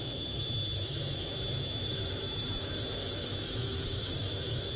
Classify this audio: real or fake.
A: fake